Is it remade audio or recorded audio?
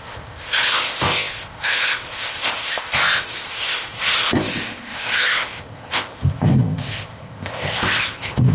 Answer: remade